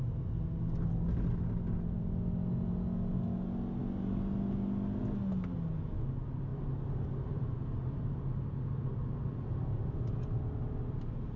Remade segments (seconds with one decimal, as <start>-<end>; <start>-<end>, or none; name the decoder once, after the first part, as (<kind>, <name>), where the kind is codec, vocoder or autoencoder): none